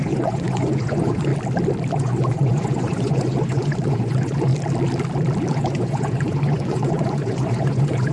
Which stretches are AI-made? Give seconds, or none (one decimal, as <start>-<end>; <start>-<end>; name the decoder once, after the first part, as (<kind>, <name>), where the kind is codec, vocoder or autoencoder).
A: 0.0-1.3 (vocoder, Vocos); 1.9-4.5; 5.5-8.1